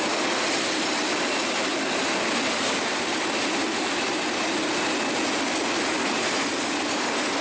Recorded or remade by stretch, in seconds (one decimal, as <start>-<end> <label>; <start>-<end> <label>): 0.0-7.4 recorded

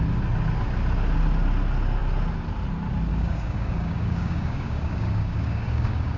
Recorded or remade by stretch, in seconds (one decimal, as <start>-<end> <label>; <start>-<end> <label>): 0.0-3.1 recorded; 3.1-6.2 remade

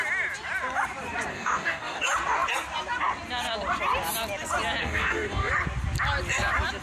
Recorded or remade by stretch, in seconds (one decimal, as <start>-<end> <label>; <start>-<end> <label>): 0.0-1.3 recorded; 1.3-2.0 remade; 2.0-4.8 recorded; 4.8-5.5 remade; 5.5-6.8 recorded

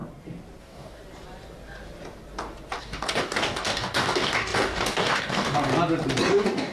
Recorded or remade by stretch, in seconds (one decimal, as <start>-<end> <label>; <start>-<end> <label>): 0.0-0.6 recorded; 0.6-1.0 remade; 1.0-2.8 recorded; 2.8-5.7 remade; 5.7-6.3 recorded; 6.3-6.7 remade

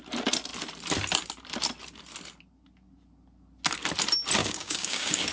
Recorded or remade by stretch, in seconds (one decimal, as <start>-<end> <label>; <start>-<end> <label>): 0.0-4.4 recorded; 4.4-5.3 remade

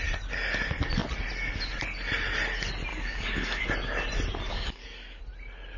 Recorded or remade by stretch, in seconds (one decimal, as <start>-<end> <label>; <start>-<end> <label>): 0.0-2.9 recorded; 2.9-3.6 remade; 3.6-4.5 recorded; 4.5-5.2 remade; 5.2-5.8 recorded